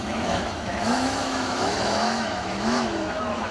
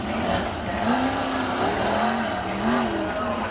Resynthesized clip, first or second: first